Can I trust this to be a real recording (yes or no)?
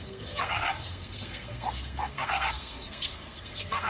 no